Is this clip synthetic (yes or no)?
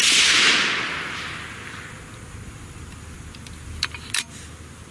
no